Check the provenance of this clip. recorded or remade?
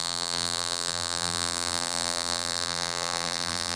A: remade